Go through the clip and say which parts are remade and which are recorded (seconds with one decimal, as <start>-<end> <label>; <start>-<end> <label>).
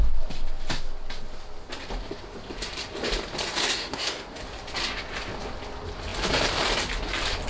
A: 0.0-3.6 recorded; 3.6-4.4 remade; 4.4-7.5 recorded